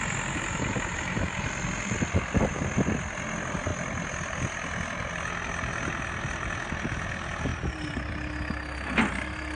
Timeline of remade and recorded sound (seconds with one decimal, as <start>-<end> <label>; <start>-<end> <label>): 0.0-0.9 recorded; 0.9-2.6 remade; 2.6-9.6 recorded